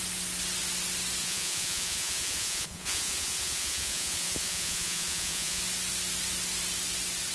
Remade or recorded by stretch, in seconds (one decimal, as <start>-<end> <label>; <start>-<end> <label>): 0.0-1.2 recorded; 1.2-5.6 remade; 5.6-7.3 recorded